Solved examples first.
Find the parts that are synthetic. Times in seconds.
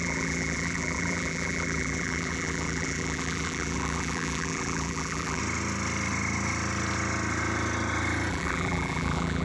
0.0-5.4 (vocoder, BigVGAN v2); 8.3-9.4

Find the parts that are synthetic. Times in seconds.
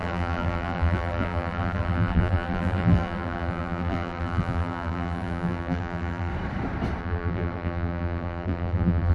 0.0-6.3 (vocoder, BigVGAN v2); 7.0-9.1